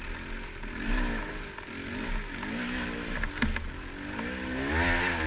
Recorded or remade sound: recorded